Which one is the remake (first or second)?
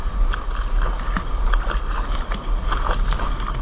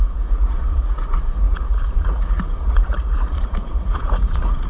second